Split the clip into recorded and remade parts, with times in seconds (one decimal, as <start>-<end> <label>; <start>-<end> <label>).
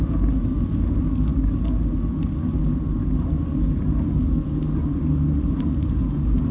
0.0-6.5 recorded